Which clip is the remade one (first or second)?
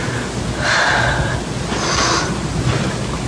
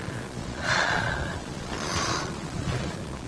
second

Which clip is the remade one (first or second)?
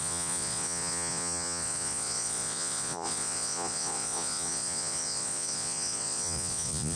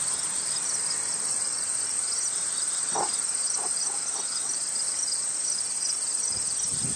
first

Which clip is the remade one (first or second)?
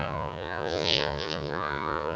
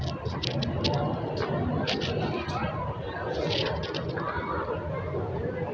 first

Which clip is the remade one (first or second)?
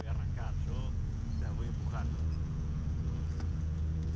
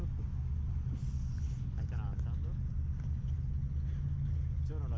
first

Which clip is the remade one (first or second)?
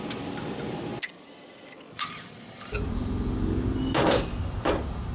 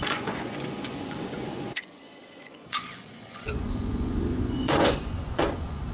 second